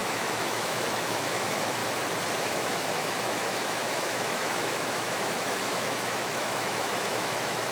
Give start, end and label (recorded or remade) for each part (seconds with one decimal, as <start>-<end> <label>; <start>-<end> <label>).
0.0-1.8 remade; 1.8-2.4 recorded; 2.4-7.7 remade